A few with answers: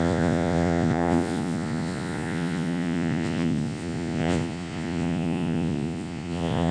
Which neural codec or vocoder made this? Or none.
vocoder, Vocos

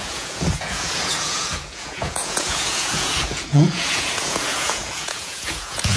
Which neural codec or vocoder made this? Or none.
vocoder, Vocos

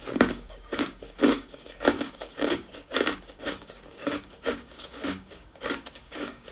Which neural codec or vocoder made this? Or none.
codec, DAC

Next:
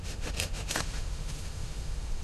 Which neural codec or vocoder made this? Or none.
autoencoder, DAC-VAE